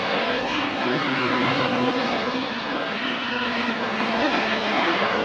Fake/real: fake